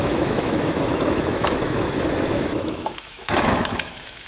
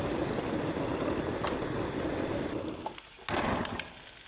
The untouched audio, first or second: second